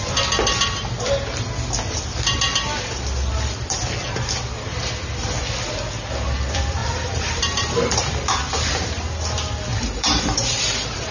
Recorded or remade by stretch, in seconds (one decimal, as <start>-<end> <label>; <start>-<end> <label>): 0.0-6.8 recorded; 6.8-8.1 remade; 8.1-9.7 recorded; 9.7-11.1 remade